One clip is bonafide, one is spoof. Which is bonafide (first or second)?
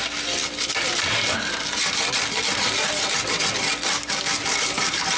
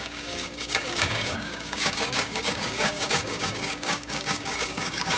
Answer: first